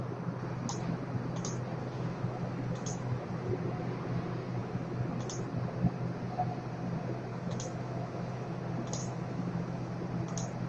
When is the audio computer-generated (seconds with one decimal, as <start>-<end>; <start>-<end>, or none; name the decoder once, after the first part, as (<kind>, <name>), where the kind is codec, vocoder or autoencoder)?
1.8-3.5 (autoencoder, DAC-VAE); 4.6-5.1; 7.3-8.6; 9.0-9.9